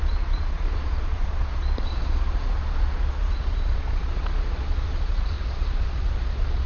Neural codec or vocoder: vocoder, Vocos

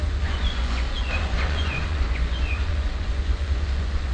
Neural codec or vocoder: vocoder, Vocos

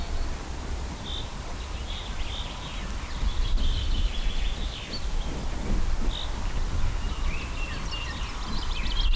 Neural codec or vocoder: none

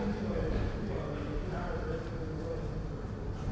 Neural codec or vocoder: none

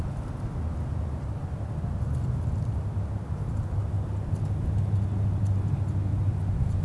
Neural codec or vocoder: none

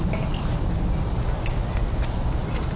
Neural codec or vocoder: none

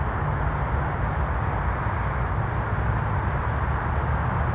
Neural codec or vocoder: none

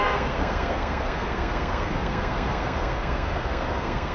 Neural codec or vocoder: codec, SNAC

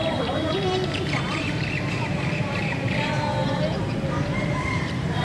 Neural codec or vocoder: vocoder, BigVGAN v2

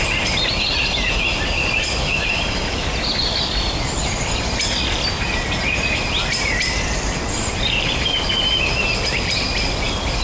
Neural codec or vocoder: vocoder, BigVGAN v2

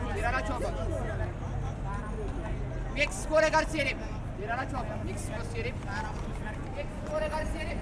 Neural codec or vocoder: none